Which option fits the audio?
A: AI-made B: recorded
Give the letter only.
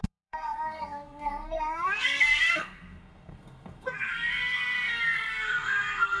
A